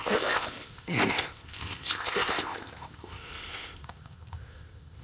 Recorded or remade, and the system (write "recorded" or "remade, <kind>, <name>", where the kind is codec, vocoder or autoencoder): remade, codec, ZipCodec